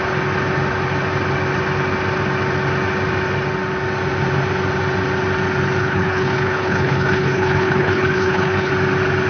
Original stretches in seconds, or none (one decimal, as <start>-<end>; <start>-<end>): 0.0-5.8; 8.7-9.3